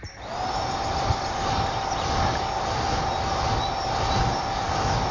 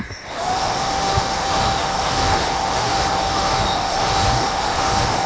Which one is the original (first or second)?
first